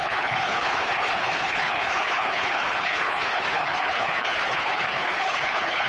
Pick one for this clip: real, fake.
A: fake